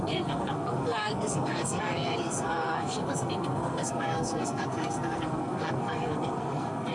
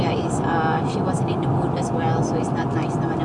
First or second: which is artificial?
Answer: first